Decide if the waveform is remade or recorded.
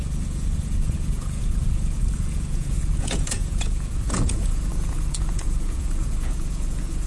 remade